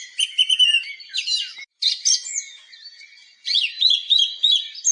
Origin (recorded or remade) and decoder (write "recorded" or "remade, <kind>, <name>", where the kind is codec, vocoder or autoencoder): recorded